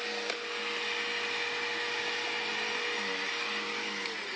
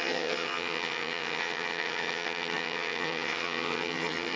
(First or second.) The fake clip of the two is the second